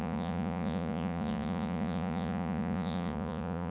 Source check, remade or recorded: remade